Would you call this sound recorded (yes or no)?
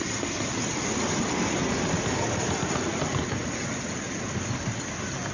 yes